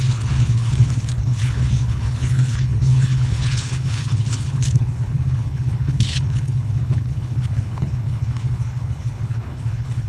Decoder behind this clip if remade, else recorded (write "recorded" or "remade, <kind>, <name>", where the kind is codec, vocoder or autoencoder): remade, codec, HILCodec